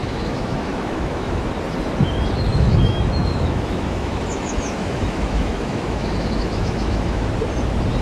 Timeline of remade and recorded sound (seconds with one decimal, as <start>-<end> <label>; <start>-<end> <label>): 0.0-1.4 remade; 1.4-2.5 recorded; 2.5-7.3 remade; 7.3-8.0 recorded